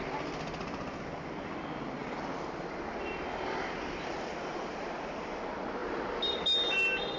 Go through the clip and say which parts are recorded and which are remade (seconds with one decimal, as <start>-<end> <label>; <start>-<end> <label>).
0.0-7.2 recorded